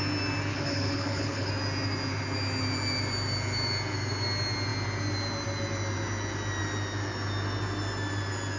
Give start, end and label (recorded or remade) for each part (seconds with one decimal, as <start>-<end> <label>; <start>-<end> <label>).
0.0-0.5 recorded; 0.5-1.5 remade; 1.5-8.6 recorded